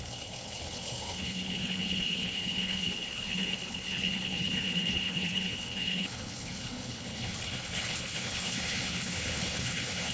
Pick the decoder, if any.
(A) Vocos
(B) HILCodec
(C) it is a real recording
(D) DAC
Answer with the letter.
B